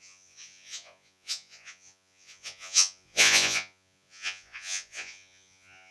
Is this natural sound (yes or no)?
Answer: no